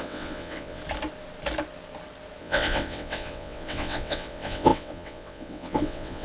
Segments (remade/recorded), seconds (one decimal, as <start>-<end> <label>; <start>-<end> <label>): 0.0-0.8 remade; 0.8-2.4 recorded; 2.4-6.2 remade